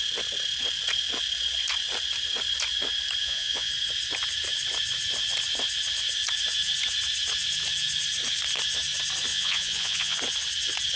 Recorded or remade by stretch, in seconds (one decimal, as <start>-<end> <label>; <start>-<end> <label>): 0.0-3.2 recorded; 3.2-3.7 remade; 3.7-9.3 recorded; 9.3-10.2 remade; 10.2-11.0 recorded